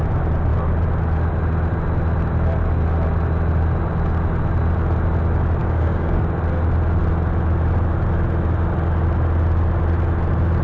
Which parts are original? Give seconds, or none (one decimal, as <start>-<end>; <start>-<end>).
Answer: 0.0-5.6; 6.2-10.6